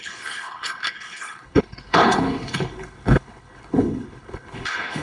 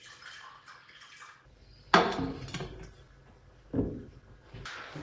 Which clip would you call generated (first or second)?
first